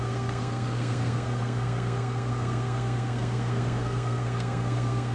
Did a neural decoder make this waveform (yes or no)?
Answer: yes